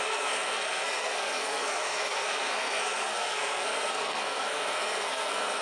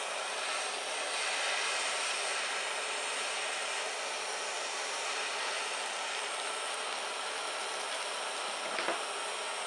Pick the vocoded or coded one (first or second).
first